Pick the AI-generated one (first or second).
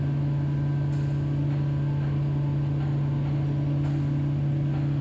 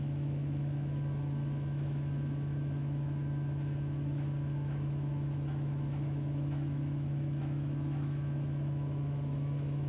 second